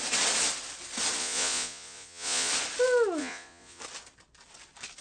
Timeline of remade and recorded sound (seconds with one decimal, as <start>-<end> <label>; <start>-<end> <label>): 0.0-1.2 recorded; 1.2-2.5 remade; 2.5-3.2 recorded; 3.2-3.8 remade; 3.8-5.0 recorded